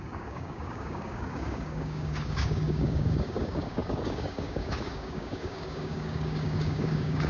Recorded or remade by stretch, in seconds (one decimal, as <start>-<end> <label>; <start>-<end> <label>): 0.0-7.3 remade